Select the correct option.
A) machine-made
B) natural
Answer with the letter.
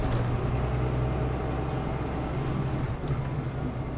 B